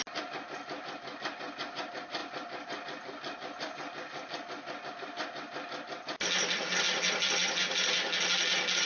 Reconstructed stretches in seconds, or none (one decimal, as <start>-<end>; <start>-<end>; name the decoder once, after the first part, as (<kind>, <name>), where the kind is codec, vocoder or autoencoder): none